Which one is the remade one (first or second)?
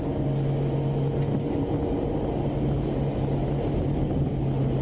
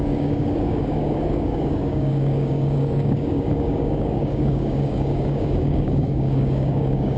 second